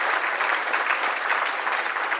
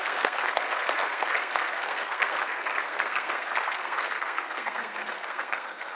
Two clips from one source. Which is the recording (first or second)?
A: first